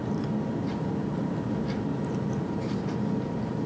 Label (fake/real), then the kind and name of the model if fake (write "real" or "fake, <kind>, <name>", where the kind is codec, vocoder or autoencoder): real